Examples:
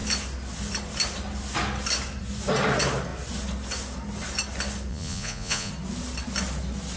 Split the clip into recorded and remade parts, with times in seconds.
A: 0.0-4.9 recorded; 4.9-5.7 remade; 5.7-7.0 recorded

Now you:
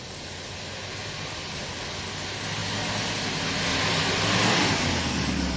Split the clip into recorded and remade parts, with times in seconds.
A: 0.0-5.6 recorded

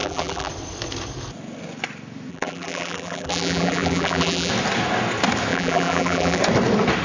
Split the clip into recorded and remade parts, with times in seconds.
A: 0.0-0.5 remade; 0.5-2.3 recorded; 2.3-4.5 remade; 4.5-5.5 recorded; 5.5-6.4 remade; 6.4-7.0 recorded

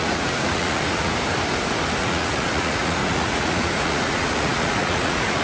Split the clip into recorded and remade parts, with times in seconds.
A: 0.0-1.1 remade; 1.1-2.0 recorded; 2.0-5.4 remade